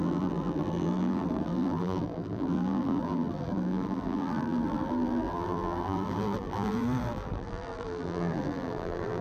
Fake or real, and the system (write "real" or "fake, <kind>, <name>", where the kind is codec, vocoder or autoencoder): fake, vocoder, BigVGAN v2